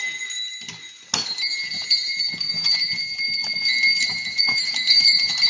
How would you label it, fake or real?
real